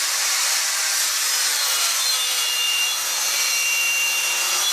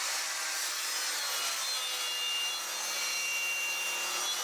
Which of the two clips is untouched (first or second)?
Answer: second